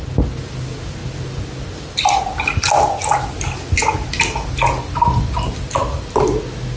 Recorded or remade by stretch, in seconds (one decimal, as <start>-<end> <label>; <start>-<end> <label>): 0.0-6.8 recorded